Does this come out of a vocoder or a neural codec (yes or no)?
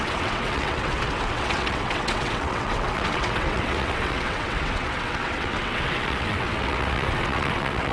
yes